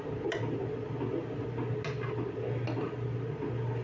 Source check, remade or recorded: recorded